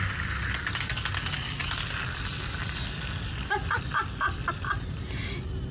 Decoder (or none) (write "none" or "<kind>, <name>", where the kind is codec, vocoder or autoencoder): none